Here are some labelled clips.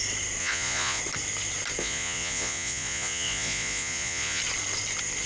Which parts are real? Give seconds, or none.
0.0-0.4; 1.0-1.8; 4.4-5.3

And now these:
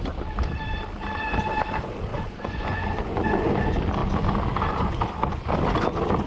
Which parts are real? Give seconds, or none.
0.0-2.1; 3.5-6.3